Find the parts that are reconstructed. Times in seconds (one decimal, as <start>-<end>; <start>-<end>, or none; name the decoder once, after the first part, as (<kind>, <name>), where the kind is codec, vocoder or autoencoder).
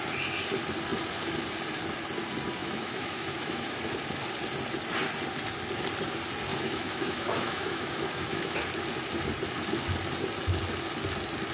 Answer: 2.6-3.8 (autoencoder, DAC-VAE); 6.5-8.6